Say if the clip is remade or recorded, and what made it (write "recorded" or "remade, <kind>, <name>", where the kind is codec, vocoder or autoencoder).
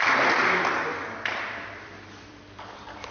remade, vocoder, BigVGAN v2